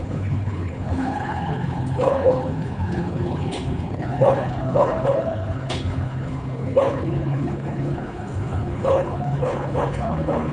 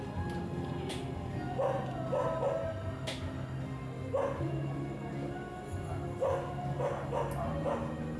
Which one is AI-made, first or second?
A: first